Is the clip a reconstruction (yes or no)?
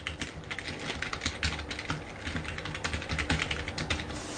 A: no